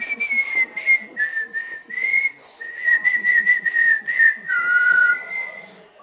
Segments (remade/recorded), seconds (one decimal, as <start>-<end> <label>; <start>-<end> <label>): 0.0-2.1 recorded; 2.1-6.0 remade